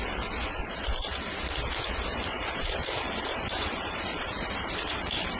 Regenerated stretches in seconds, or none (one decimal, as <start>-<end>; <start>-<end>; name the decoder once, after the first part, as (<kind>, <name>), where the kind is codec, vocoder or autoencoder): 0.6-1.4 (vocoder, BigVGAN v2); 2.1-5.4